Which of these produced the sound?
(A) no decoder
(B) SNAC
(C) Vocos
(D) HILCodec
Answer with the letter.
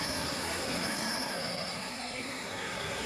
B